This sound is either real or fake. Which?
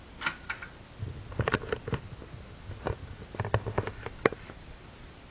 real